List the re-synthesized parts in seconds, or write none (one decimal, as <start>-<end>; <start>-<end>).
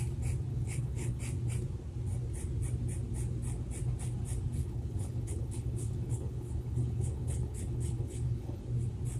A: 0.5-1.2; 4.6-8.6